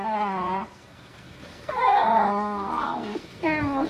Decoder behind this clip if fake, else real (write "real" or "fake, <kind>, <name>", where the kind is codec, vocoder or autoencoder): fake, codec, SNAC